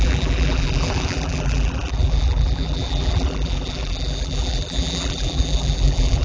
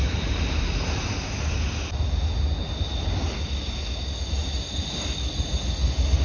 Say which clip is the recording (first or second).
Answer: second